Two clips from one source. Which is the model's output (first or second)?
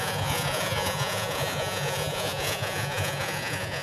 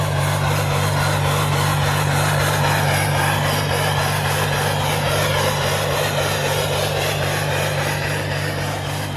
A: first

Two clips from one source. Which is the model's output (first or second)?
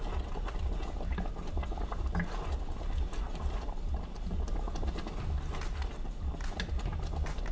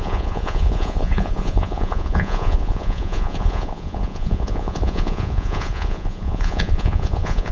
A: second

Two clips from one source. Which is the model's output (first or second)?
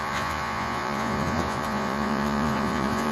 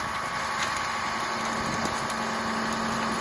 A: first